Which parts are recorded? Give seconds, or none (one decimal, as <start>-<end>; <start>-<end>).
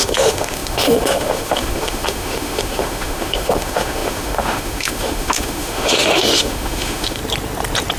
7.2-8.0